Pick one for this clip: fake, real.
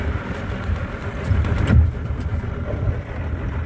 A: real